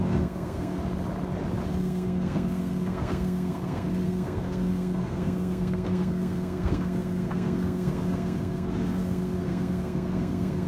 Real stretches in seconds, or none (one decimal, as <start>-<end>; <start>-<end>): 0.8-1.7